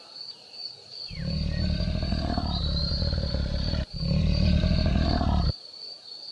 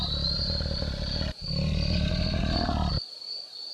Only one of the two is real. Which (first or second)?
second